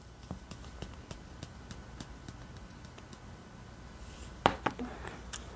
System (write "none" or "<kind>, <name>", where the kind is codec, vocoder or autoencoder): none